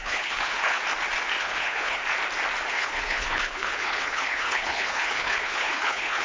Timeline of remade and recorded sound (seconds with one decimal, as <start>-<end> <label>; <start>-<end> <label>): 0.0-0.8 remade; 0.8-1.4 recorded; 1.4-2.0 remade; 2.0-2.7 recorded; 2.7-6.2 remade